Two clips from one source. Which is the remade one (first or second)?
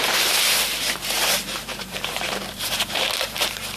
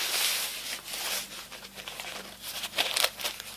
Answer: first